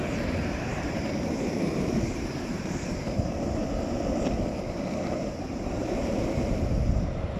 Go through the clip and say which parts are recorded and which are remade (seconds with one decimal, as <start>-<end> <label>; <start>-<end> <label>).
0.0-3.6 remade; 3.6-5.2 recorded; 5.2-7.4 remade